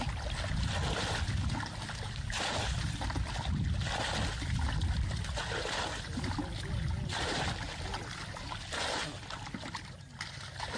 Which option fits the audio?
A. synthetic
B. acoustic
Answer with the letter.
B